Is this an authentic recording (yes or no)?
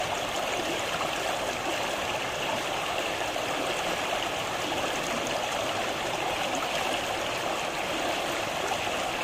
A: yes